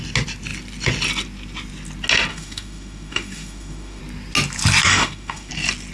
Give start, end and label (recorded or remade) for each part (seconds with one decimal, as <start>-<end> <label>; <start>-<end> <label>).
0.0-2.3 recorded; 2.3-4.0 remade; 4.0-4.9 recorded; 4.9-5.5 remade; 5.5-5.9 recorded

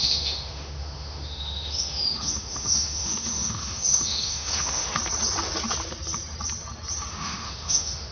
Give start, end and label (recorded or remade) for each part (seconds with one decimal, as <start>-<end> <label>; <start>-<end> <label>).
0.0-4.9 remade; 4.9-7.1 recorded; 7.1-8.1 remade

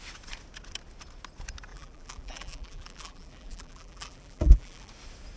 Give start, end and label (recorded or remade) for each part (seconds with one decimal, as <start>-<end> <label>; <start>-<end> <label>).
0.0-1.7 recorded; 1.7-4.9 remade; 4.9-5.4 recorded